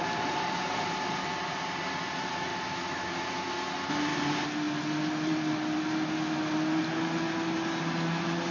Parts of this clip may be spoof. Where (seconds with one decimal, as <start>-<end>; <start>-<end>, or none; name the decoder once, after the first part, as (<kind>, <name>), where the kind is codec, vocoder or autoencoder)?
2.5-3.5 (autoencoder, DAC-VAE)